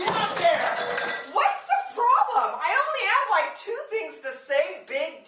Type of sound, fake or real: real